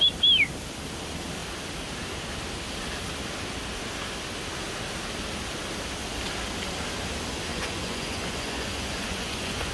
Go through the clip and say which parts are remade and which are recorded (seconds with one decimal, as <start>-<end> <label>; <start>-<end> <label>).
0.0-7.5 recorded; 7.5-9.7 remade